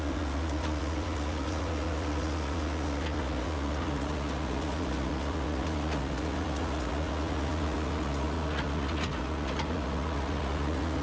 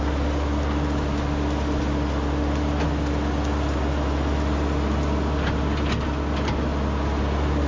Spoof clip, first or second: first